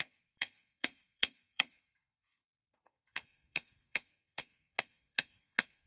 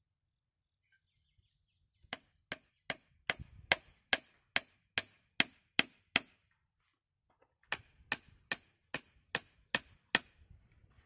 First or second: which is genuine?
second